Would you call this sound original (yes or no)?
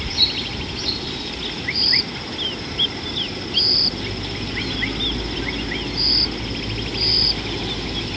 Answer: yes